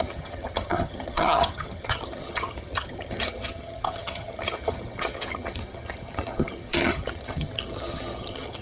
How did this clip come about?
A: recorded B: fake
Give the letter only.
B